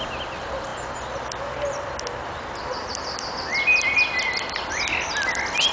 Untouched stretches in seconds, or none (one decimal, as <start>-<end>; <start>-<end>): 0.0-5.7